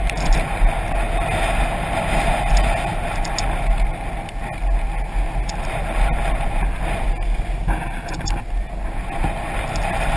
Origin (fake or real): real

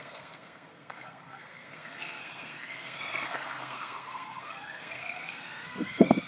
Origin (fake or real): fake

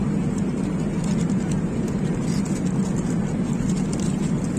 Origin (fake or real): real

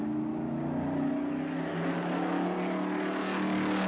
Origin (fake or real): real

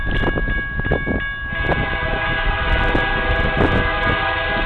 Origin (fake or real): real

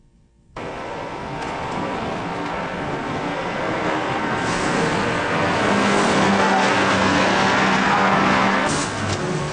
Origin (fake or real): fake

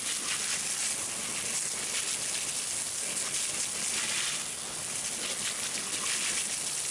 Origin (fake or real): real